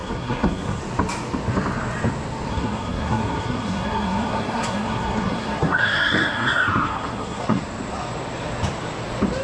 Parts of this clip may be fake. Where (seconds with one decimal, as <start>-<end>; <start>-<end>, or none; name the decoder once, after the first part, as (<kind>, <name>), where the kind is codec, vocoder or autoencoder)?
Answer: 0.0-0.8 (codec, SNAC); 2.5-7.6